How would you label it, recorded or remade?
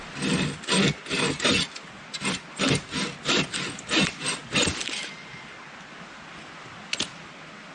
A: recorded